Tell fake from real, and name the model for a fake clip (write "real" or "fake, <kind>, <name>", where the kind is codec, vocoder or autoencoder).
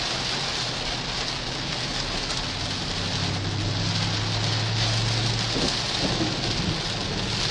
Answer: real